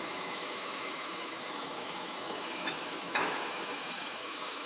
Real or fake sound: fake